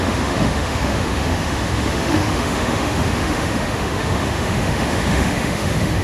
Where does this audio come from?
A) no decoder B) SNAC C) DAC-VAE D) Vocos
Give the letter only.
C